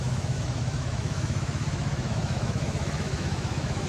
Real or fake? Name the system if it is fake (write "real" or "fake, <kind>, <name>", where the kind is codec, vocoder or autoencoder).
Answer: fake, autoencoder, DAC-VAE